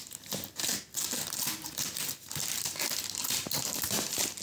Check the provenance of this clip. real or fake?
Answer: real